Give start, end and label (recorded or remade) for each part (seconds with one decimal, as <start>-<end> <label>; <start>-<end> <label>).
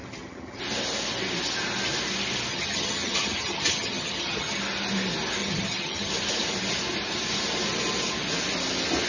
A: 0.0-0.6 remade; 0.6-2.5 recorded; 2.5-4.6 remade; 4.6-5.4 recorded; 5.4-6.1 remade; 6.1-9.1 recorded